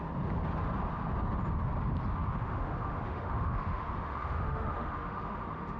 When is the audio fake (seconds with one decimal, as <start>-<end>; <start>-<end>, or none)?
2.2-5.8